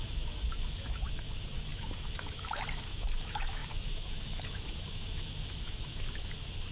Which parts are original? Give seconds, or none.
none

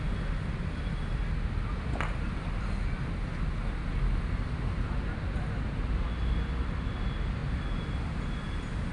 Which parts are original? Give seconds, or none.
0.0-8.9

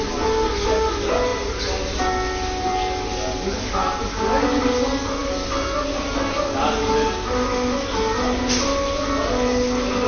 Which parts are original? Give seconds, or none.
0.0-10.1

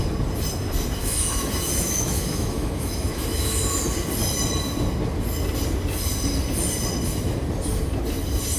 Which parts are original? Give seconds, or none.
0.0-1.0; 3.8-8.6